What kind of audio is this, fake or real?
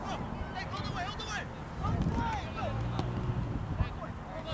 real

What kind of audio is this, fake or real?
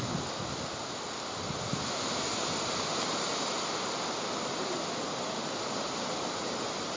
real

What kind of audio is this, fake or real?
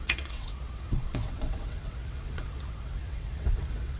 fake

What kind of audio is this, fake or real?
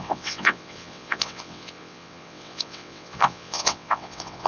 fake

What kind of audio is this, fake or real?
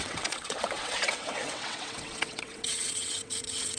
fake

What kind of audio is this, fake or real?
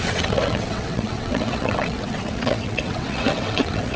fake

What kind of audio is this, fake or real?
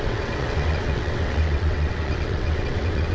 fake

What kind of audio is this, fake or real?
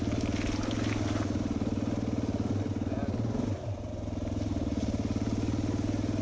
real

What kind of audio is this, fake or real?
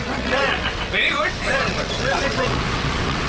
fake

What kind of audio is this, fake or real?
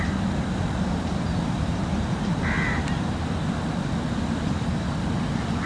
real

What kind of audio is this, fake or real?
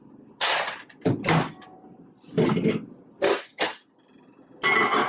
real